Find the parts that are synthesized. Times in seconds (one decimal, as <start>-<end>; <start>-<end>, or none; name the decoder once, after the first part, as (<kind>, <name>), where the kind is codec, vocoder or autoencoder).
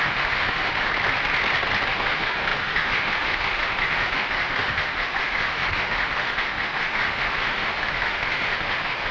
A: 0.0-0.9 (autoencoder, DAC-VAE); 1.9-9.1